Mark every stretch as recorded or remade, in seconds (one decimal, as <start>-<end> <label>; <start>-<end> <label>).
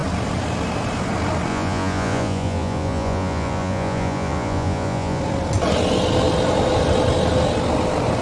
0.0-1.5 recorded; 1.5-5.2 remade; 5.2-8.2 recorded